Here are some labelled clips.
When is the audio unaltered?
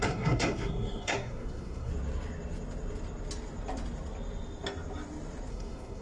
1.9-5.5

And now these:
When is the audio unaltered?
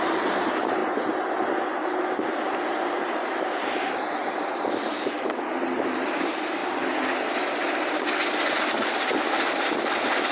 0.8-2.1; 4.2-4.9; 6.6-8.5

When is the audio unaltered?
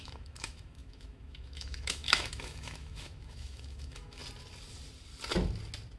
4.2-6.0